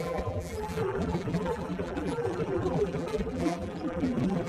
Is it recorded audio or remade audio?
remade